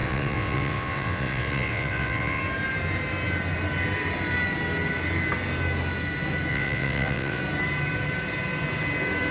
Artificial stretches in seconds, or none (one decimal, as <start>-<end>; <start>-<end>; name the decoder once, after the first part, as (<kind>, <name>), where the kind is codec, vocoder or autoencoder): 0.0-2.4 (vocoder, WaveNeXt); 6.5-7.4